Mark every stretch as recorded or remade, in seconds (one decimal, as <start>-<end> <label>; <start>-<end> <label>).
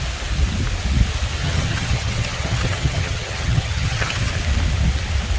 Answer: 0.0-1.4 recorded; 1.4-4.3 remade; 4.3-5.4 recorded